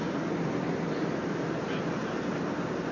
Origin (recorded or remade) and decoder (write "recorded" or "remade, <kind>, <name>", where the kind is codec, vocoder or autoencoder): recorded